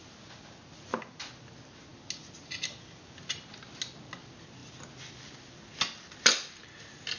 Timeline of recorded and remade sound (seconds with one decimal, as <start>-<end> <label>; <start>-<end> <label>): 0.0-7.2 recorded